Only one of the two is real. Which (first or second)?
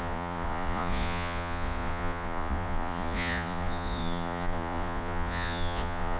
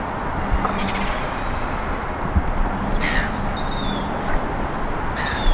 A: second